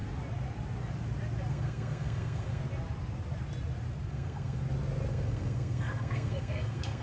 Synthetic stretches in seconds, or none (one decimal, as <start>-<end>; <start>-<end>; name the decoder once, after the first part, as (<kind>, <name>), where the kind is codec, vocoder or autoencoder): 1.5-2.6 (codec, SNAC); 4.1-4.6; 5.1-7.0